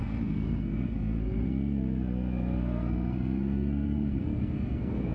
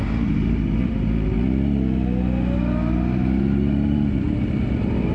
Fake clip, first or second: first